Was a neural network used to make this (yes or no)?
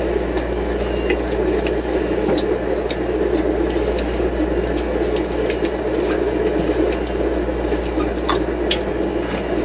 no